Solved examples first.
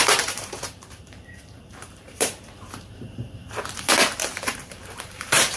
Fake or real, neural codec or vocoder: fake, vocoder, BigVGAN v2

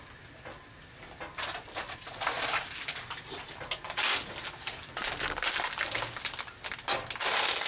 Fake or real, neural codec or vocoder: real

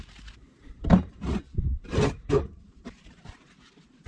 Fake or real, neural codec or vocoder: fake, vocoder, BigVGAN v2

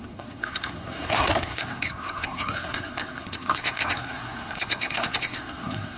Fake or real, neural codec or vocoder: fake, codec, SNAC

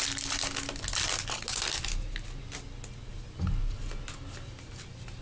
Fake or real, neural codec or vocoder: real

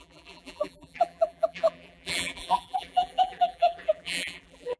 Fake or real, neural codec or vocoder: fake, vocoder, BigVGAN v2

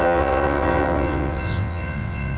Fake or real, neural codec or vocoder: fake, vocoder, WaveNeXt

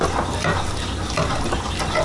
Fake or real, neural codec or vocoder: real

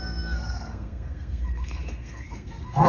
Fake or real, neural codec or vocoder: fake, codec, SNAC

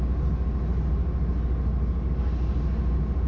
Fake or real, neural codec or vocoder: real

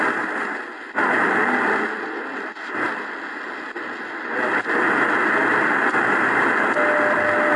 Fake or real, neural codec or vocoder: real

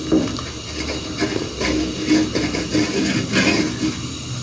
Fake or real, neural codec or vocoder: real